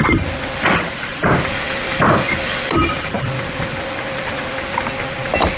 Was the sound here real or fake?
real